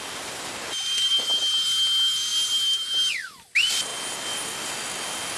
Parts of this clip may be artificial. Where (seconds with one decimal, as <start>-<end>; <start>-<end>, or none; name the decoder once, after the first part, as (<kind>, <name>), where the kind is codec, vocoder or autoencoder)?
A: none